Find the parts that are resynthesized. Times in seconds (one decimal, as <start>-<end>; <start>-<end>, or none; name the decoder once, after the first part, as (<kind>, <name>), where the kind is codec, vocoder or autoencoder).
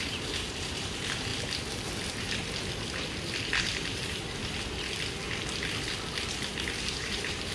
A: 0.0-1.3 (vocoder, BigVGAN v2); 3.6-4.4; 6.8-7.5